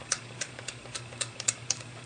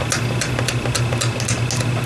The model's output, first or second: first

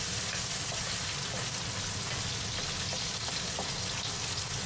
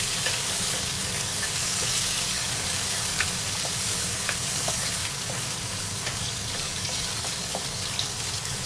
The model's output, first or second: second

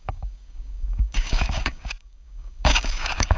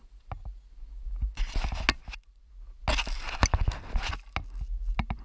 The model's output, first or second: first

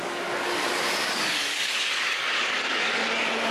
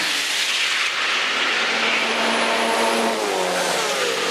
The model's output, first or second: first